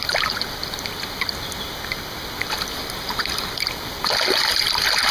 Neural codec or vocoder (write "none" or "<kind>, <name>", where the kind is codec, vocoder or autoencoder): vocoder, BigVGAN v2